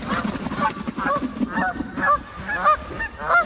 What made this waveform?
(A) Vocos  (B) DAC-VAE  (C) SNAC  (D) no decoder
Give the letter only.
D